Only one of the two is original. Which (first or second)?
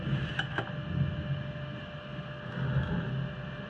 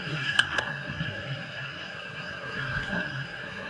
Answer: first